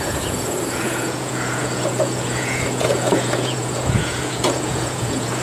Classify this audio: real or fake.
fake